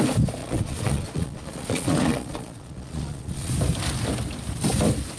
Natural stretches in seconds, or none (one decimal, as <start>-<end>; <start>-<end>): 0.0-0.4; 3.5-5.2